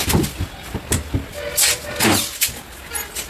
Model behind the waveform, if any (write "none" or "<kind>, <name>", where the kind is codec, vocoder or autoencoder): none